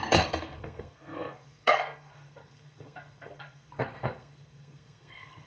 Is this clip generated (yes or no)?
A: yes